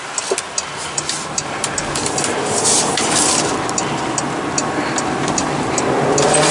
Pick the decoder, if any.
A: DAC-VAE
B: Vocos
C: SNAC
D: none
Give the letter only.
D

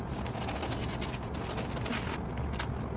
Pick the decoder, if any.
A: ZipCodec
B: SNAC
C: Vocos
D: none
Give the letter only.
D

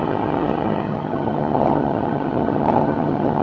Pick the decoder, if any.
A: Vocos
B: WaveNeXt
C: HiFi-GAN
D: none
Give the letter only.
C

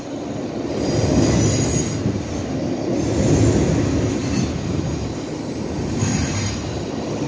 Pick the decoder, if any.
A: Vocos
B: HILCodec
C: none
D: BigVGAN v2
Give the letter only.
C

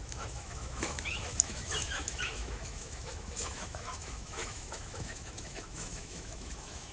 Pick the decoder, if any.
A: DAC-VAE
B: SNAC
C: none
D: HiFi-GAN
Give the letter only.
A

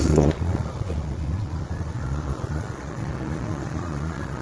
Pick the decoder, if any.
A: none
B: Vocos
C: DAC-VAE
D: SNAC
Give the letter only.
B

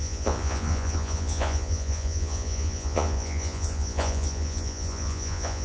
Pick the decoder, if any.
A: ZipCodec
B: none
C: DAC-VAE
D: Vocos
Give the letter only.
D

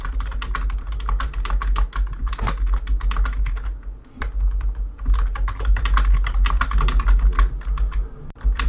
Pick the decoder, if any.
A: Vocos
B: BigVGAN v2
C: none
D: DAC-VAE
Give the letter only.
C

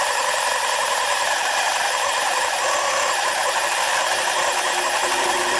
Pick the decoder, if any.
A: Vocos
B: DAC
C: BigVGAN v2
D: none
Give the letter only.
D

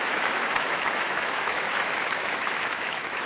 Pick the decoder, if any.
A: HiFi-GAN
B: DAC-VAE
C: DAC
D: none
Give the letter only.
B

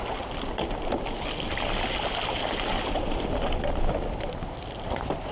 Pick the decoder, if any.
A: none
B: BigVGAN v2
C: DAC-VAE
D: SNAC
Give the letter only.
A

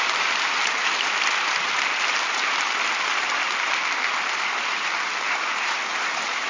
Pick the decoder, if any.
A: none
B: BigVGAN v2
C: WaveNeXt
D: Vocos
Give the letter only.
B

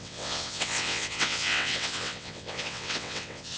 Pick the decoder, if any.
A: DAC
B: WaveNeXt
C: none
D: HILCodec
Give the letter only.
B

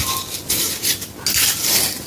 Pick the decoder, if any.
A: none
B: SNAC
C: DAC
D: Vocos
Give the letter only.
A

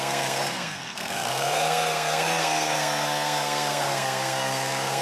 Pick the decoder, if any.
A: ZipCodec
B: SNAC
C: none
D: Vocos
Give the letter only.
B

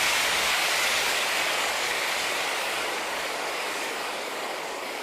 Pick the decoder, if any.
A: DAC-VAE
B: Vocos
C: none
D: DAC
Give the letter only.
D